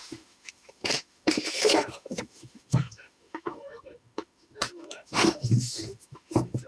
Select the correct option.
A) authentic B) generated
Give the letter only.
B